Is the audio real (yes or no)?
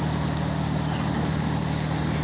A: yes